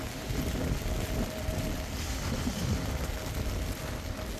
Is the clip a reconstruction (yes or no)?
no